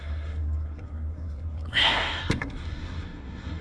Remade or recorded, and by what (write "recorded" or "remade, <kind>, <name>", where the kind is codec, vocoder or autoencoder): remade, codec, SNAC